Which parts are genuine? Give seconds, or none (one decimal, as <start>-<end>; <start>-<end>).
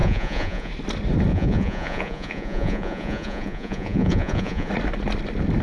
0.7-1.3; 4.7-5.6